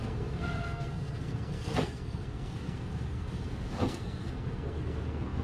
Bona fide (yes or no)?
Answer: no